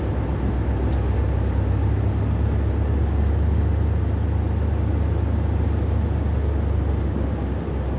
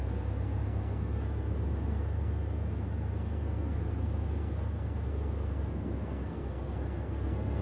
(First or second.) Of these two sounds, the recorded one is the first